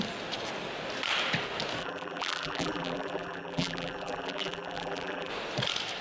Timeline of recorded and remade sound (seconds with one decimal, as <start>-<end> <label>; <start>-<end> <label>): 0.0-1.8 recorded; 1.8-5.3 remade; 5.3-6.0 recorded